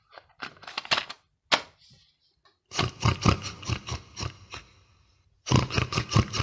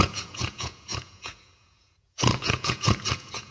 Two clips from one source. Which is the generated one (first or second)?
second